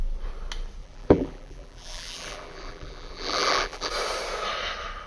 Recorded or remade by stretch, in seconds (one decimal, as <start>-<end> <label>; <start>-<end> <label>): 0.0-0.8 recorded; 0.8-3.9 remade; 3.9-5.1 recorded